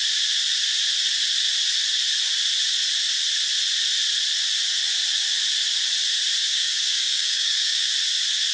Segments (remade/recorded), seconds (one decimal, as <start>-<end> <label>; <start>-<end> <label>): 0.0-6.5 recorded; 6.5-7.9 remade; 7.9-8.5 recorded